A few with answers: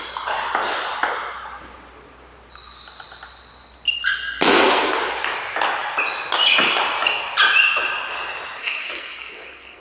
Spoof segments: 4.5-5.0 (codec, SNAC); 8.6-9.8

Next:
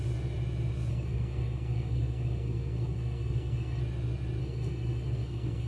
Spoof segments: 0.9-3.8 (codec, SNAC); 4.4-5.7

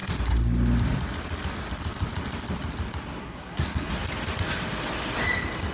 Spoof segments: 3.2-3.9 (codec, SNAC)

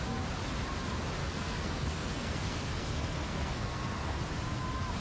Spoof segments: 1.2-4.2 (codec, SNAC)

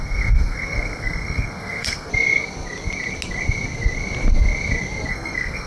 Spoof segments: 0.0-2.1 (codec, SNAC); 5.1-5.7

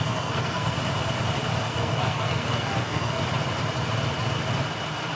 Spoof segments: 0.0-0.8 (codec, SNAC); 1.6-3.2